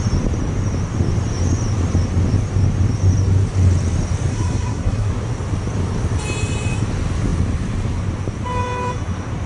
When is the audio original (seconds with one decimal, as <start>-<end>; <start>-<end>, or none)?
0.0-4.3; 5.1-9.5